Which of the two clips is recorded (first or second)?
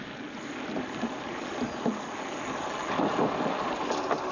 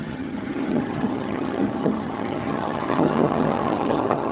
first